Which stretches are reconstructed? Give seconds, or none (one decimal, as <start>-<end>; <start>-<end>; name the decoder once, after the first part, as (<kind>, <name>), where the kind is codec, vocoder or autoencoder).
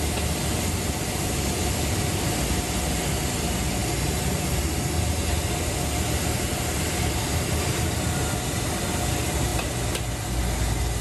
none